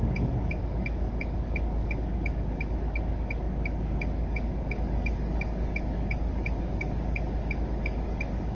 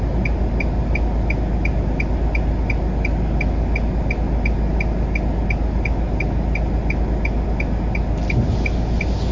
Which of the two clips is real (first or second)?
second